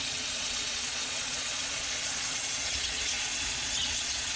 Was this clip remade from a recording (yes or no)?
yes